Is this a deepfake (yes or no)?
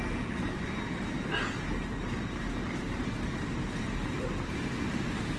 no